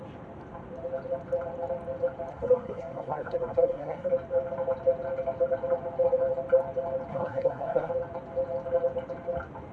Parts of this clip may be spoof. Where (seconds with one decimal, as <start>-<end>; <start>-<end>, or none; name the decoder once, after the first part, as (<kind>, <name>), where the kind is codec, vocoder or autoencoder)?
2.3-4.1 (codec, SNAC); 7.1-7.9